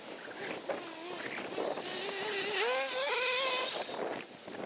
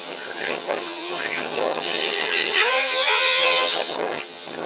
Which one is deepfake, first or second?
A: second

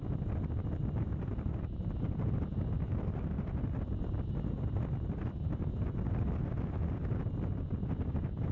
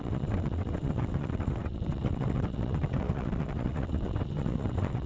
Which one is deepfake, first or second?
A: second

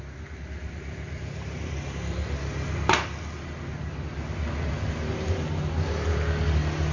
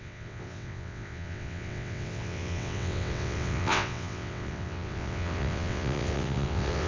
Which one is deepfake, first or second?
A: second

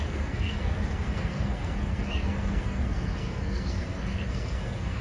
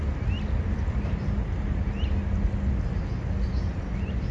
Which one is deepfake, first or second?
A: first